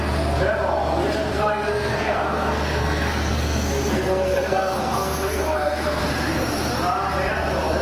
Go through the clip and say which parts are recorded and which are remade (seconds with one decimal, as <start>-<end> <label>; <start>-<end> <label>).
0.0-1.3 recorded; 1.3-6.0 remade; 6.0-7.8 recorded